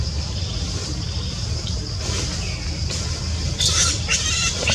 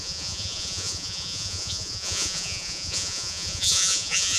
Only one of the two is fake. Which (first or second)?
second